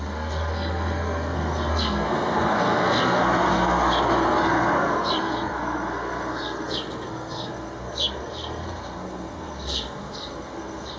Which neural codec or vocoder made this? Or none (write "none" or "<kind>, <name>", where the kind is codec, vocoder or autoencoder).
codec, SNAC